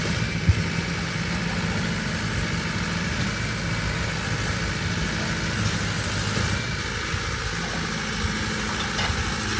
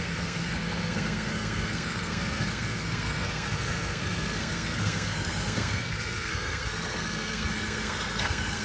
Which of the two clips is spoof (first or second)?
second